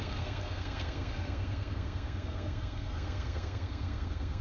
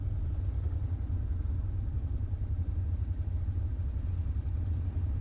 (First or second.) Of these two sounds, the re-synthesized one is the first